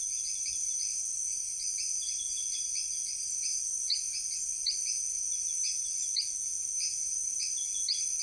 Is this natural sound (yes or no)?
yes